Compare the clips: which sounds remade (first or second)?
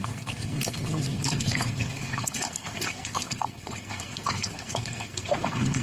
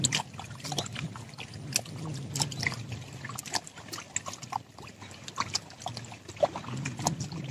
first